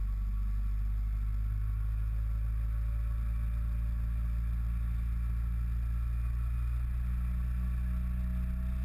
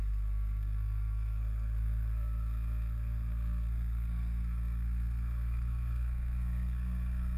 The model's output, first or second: second